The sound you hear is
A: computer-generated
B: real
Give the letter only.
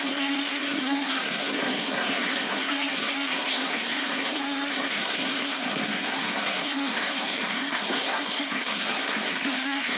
A